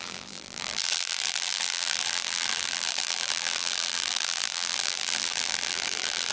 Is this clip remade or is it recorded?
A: remade